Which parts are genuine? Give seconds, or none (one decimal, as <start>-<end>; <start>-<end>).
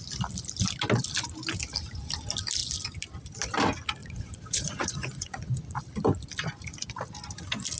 0.0-4.0; 5.8-7.8